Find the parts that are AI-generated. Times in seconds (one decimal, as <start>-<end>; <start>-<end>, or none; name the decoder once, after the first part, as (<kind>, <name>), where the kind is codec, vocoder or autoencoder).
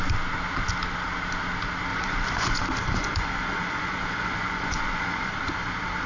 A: 1.9-2.6 (vocoder, Vocos); 3.0-5.3